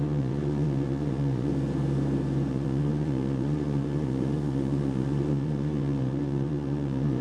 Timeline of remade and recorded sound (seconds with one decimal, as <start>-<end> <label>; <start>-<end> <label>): 0.0-1.5 remade; 1.5-2.5 recorded; 2.5-7.2 remade